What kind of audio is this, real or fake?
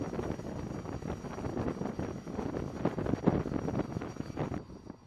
real